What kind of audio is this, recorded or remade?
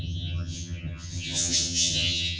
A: remade